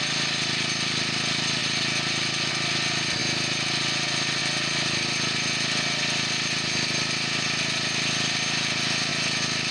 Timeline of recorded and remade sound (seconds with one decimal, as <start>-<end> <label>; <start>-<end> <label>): 0.0-9.7 recorded